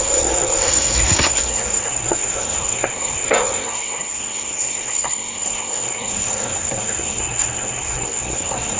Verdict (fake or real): fake